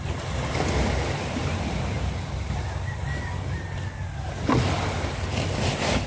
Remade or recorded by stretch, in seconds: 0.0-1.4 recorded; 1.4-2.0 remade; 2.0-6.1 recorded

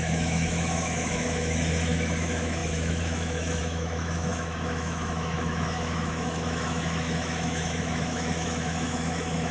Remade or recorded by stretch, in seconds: 0.0-9.5 remade

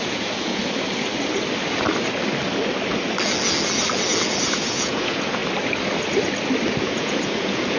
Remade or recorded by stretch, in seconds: 0.0-0.6 remade; 0.6-4.4 recorded; 4.4-5.4 remade; 5.4-6.8 recorded; 6.8-7.8 remade

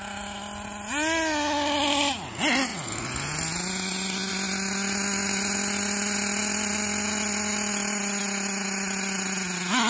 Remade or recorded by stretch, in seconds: 0.0-9.9 recorded

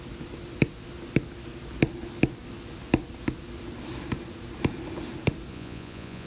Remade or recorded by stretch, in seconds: 0.0-5.5 recorded; 5.5-6.3 remade

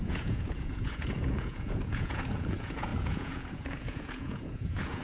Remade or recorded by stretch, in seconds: 0.0-5.0 remade

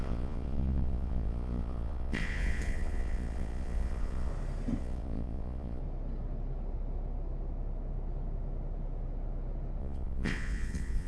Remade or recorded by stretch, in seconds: 0.0-4.3 remade; 4.3-4.8 recorded; 4.8-5.8 remade; 5.8-9.8 recorded; 9.8-11.1 remade